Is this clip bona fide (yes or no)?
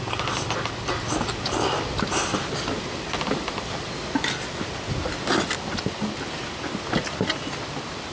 yes